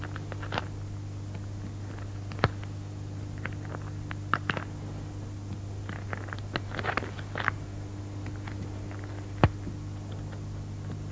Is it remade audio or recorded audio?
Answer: recorded